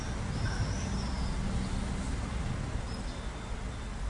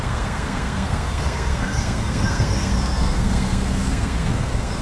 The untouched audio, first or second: first